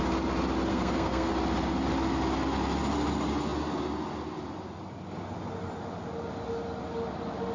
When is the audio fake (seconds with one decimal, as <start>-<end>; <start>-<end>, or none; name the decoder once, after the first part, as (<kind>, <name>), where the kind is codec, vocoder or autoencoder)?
0.7-1.3 (codec, SNAC)